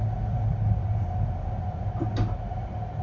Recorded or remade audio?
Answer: recorded